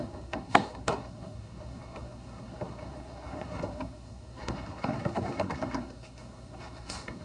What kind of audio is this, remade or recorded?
remade